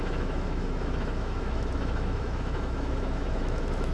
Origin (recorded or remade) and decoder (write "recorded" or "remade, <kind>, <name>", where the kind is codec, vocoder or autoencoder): remade, autoencoder, DAC-VAE